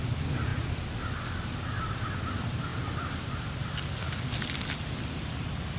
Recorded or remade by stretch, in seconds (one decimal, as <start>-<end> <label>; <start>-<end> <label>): 0.0-5.8 recorded